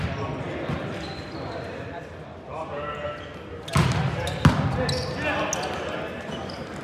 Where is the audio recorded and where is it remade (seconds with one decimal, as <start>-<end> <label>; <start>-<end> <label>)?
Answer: 0.0-6.8 recorded